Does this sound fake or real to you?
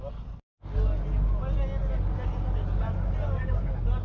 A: real